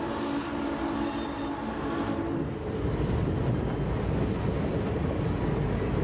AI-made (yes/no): no